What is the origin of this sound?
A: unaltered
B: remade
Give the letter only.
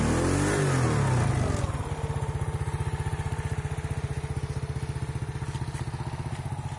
A